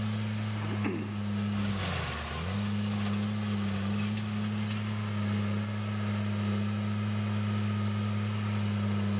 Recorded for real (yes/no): yes